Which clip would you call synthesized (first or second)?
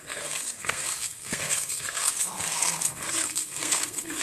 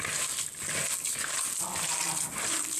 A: first